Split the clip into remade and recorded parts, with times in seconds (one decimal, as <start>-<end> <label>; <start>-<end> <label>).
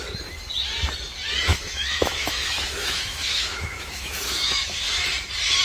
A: 0.0-1.5 recorded; 1.5-4.9 remade; 4.9-5.6 recorded